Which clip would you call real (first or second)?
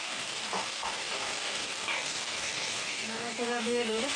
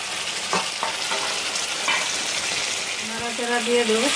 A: second